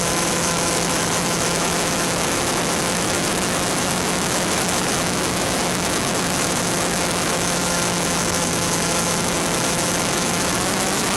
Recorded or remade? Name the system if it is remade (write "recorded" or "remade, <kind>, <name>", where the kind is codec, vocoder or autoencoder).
remade, autoencoder, DAC-VAE